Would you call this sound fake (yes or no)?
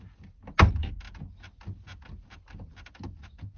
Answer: no